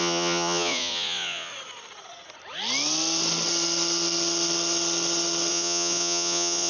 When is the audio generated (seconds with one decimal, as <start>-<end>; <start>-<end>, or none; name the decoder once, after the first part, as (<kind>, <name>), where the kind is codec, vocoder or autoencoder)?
0.0-1.5 (vocoder, Vocos); 5.5-6.7